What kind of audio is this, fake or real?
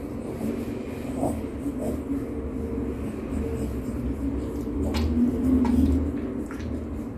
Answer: real